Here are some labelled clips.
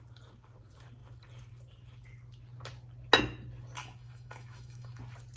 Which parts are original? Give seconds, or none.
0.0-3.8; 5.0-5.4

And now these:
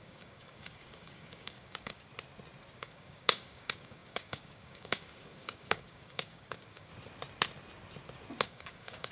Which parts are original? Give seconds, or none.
2.1-2.7; 6.9-8.4

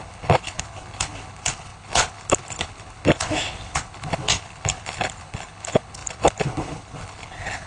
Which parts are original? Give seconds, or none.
none

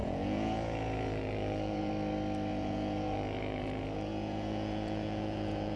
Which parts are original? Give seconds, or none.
1.9-2.5

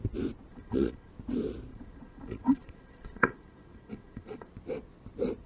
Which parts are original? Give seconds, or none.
0.0-0.5; 1.1-1.7; 4.5-5.5

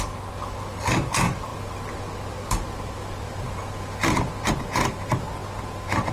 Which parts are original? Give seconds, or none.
0.0-6.1